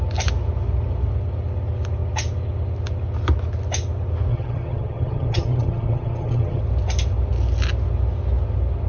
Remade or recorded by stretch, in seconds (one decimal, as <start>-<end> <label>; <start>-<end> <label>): 0.0-4.3 recorded; 4.3-6.6 remade; 6.6-8.9 recorded